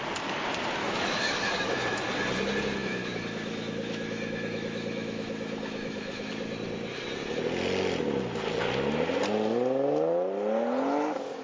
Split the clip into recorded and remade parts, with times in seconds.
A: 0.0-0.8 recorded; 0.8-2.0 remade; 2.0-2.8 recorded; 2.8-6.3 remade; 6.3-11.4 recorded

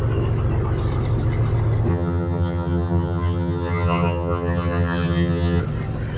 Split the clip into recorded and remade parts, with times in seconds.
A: 0.0-1.9 recorded; 1.9-5.6 remade; 5.6-6.2 recorded

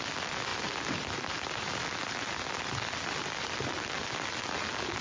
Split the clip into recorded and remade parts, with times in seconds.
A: 0.0-5.0 recorded

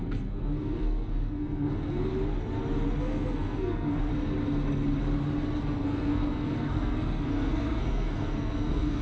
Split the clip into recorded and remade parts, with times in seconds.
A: 0.0-2.1 remade; 2.1-3.0 recorded; 3.0-4.1 remade; 4.1-5.6 recorded; 5.6-9.0 remade